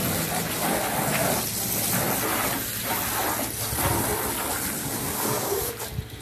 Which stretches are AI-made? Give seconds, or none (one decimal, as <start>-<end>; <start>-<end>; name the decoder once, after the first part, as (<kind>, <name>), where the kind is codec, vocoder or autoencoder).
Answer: 4.8-5.7 (codec, DAC)

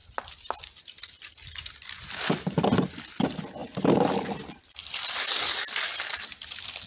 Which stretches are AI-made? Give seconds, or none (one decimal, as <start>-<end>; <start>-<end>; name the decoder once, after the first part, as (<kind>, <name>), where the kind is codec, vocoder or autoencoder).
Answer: none

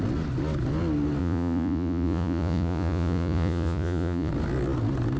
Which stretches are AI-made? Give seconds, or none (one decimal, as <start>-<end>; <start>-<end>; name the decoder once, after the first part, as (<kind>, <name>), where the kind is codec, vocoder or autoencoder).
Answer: 1.2-4.3 (vocoder, Vocos)

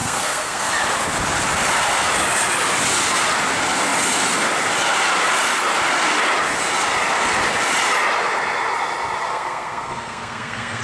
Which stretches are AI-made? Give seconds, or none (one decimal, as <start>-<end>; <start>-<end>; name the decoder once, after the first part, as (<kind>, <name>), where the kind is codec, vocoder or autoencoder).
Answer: 0.0-0.7 (codec, SNAC); 9.3-10.8

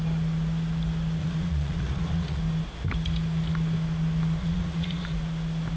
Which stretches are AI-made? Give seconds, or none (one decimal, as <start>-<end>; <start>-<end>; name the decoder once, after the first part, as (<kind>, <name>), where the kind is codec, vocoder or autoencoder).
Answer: 1.2-2.4 (vocoder, Vocos); 4.4-5.2

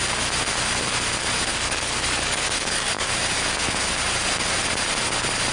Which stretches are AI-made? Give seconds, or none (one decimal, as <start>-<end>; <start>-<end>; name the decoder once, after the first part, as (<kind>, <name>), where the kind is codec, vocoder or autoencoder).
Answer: 1.5-3.1 (codec, DAC)